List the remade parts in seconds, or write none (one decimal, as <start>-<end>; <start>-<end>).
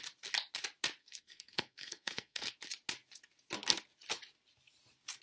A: 1.0-2.5